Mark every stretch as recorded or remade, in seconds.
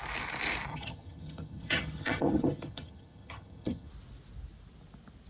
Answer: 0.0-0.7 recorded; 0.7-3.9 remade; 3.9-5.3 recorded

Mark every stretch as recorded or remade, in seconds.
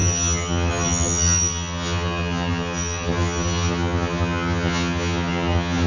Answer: 0.0-5.9 remade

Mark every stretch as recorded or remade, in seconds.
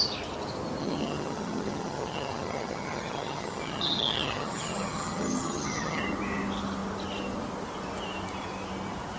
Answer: 0.0-0.8 recorded; 0.8-6.0 remade; 6.0-9.2 recorded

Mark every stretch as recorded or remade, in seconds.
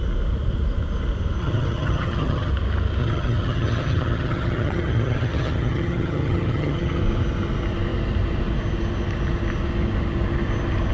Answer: 0.0-1.4 recorded; 1.4-2.5 remade; 2.5-3.0 recorded; 3.0-7.0 remade; 7.0-10.9 recorded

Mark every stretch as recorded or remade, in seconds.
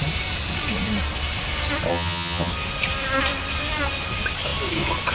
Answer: 0.0-1.9 recorded; 1.9-2.5 remade; 2.5-5.1 recorded